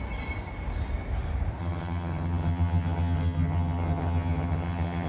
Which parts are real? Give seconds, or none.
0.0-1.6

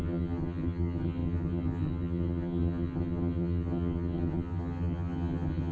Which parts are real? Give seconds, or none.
none